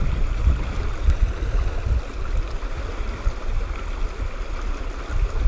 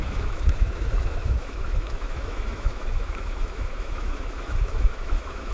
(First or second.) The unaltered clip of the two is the first